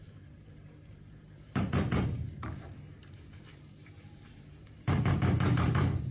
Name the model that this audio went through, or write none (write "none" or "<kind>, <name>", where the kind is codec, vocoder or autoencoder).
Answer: vocoder, BigVGAN v2